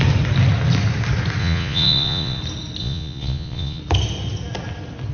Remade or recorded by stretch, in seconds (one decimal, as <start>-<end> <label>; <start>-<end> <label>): 0.0-1.4 recorded; 1.4-2.4 remade; 2.4-2.8 recorded; 2.8-3.8 remade; 3.8-5.1 recorded